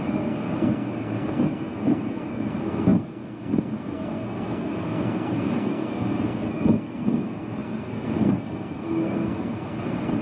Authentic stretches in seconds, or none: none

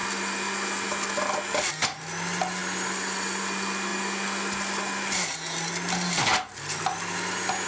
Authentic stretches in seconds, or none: 0.0-7.7

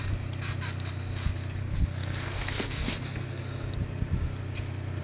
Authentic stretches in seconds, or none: 0.0-1.6; 3.4-5.0

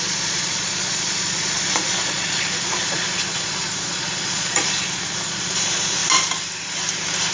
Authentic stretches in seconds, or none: 6.0-7.3

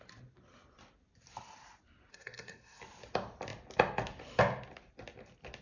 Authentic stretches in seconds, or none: 0.0-2.1; 2.8-5.6